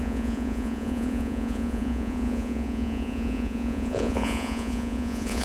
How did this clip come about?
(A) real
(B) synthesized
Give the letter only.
B